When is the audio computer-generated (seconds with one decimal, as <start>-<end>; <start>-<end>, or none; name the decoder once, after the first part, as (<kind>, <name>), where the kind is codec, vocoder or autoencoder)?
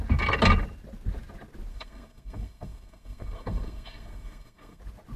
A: 1.7-4.8 (codec, SNAC)